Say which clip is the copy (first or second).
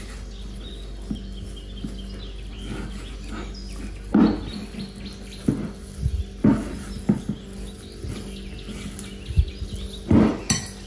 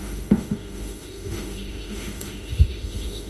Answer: second